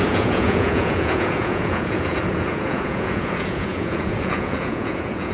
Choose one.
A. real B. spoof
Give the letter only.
B